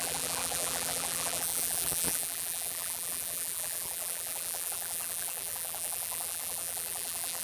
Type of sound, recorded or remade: remade